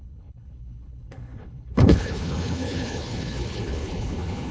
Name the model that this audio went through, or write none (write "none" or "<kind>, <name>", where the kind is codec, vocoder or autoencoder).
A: codec, HILCodec